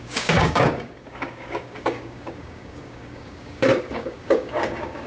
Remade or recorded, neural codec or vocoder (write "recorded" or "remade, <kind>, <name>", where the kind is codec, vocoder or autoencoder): remade, codec, DAC